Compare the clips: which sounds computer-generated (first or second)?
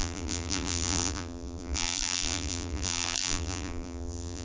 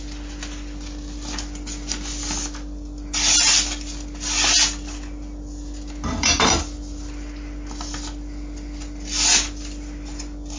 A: first